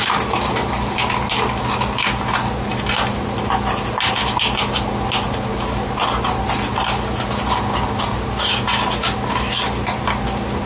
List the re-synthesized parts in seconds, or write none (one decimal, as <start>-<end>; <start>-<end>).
none